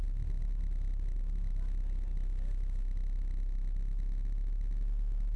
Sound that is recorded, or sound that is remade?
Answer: recorded